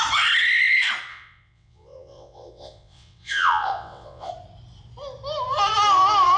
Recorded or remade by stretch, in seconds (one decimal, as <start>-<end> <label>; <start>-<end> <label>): 0.0-1.1 recorded; 1.1-4.3 remade; 4.3-6.4 recorded